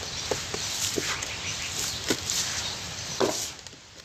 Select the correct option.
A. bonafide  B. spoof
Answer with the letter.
B